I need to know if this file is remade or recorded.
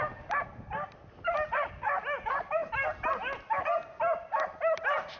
recorded